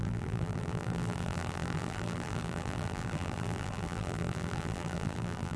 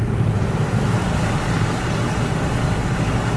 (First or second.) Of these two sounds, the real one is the second